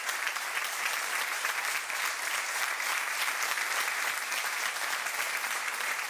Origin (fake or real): fake